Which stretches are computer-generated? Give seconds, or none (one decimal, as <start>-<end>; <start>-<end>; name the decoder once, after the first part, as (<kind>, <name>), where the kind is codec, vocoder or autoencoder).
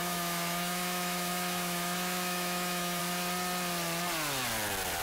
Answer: 0.0-3.0 (autoencoder, DAC-VAE)